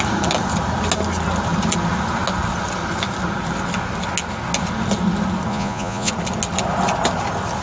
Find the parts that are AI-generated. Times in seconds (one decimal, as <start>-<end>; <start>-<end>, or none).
5.5-6.1